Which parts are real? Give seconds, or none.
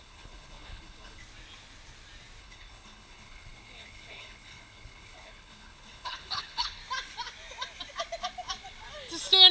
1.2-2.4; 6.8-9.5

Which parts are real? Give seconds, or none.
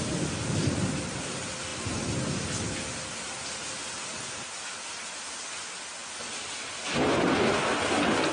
0.0-8.3